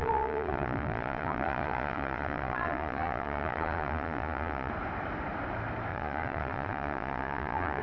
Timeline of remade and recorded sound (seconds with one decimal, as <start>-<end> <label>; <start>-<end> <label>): 0.0-4.7 remade; 4.7-5.9 recorded; 5.9-7.8 remade